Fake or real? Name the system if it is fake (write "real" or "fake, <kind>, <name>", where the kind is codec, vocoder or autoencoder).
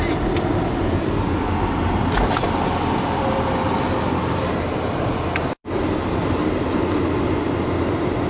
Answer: real